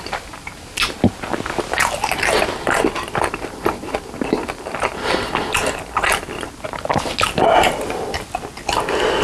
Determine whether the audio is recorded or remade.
recorded